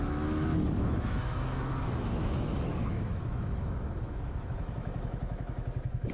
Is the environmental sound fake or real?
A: fake